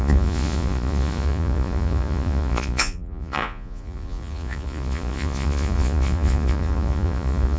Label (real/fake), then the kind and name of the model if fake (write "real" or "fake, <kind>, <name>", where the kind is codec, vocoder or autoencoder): fake, vocoder, Vocos